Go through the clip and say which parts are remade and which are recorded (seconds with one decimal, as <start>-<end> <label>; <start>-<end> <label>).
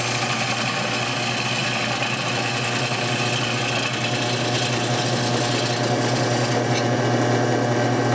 0.0-8.1 recorded